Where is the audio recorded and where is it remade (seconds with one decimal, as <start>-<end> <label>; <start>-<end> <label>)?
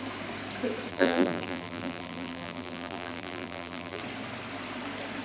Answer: 0.0-0.9 recorded; 0.9-4.0 remade; 4.0-5.2 recorded